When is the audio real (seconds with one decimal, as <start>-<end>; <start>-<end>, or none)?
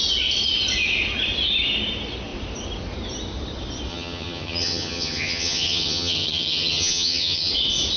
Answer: 0.0-3.9; 7.5-8.0